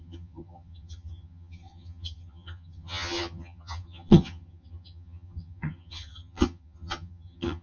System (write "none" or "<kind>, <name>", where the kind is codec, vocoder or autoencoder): vocoder, HiFi-GAN